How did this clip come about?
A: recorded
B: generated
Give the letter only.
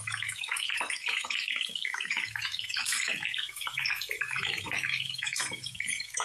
B